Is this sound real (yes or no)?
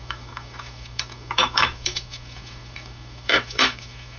no